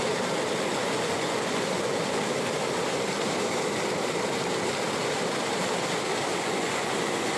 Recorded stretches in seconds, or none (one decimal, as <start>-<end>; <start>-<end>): 0.0-0.7; 2.2-6.3